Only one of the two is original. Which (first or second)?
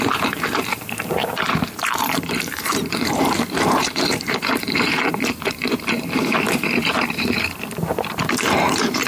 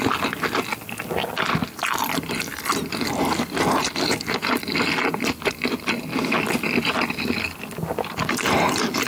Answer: second